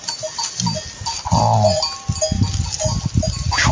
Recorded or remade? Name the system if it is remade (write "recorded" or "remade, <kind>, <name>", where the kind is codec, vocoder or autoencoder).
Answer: recorded